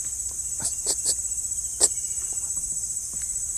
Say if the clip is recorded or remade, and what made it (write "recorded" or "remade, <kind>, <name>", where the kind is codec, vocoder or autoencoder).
recorded